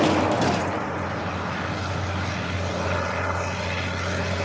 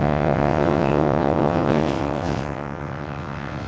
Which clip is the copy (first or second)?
second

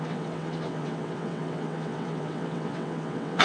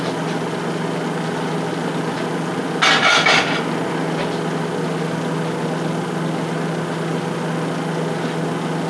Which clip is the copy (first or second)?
first